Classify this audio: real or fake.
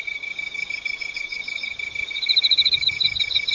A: fake